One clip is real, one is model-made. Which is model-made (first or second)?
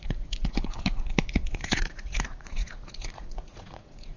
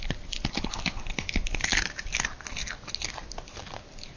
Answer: first